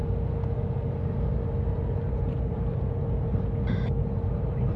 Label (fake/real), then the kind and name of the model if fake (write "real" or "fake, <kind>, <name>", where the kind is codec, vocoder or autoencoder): real